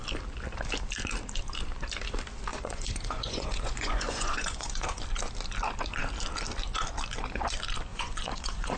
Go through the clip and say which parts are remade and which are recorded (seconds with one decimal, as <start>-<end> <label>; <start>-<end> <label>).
0.0-2.5 recorded; 2.5-5.0 remade; 5.0-7.9 recorded; 7.9-8.8 remade